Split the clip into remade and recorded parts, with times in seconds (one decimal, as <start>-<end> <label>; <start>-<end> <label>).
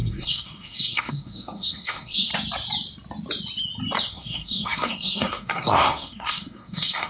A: 0.0-2.3 remade; 2.3-4.1 recorded; 4.1-7.1 remade